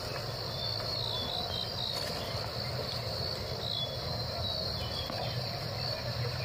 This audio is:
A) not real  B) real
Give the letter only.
B